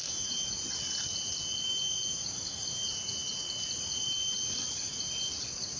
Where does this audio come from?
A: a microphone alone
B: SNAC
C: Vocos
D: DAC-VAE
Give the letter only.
A